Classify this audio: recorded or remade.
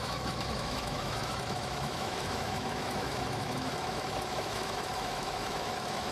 remade